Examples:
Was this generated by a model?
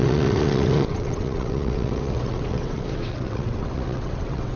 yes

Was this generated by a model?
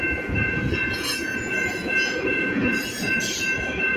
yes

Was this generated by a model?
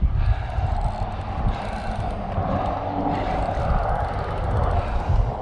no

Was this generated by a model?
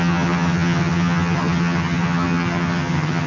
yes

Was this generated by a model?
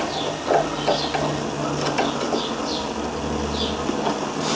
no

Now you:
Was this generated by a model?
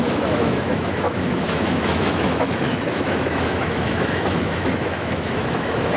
yes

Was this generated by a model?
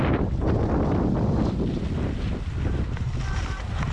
no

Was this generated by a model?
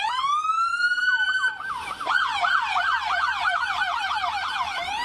no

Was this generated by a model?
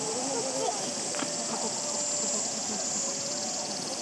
no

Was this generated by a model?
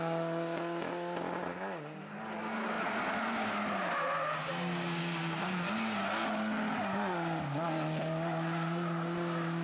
no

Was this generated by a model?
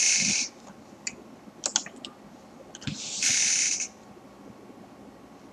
no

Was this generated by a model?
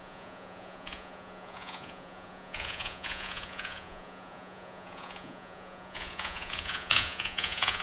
yes